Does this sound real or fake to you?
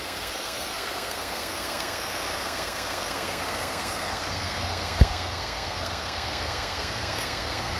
fake